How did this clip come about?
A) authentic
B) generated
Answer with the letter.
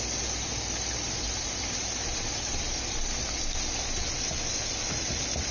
A